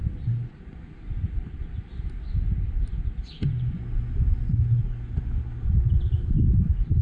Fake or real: real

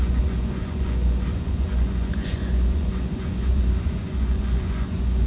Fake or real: fake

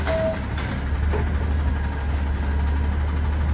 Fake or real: real